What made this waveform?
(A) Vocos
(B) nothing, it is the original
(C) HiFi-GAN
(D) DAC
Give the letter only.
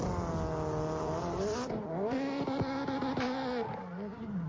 B